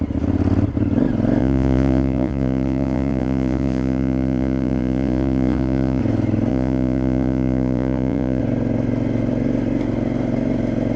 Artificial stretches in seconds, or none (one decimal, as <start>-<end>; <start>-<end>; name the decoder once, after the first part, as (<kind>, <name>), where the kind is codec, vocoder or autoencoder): 1.4-6.0 (vocoder, Vocos); 6.5-8.4